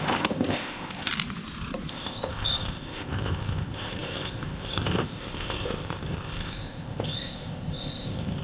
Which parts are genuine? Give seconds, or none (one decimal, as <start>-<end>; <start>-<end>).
1.1-1.9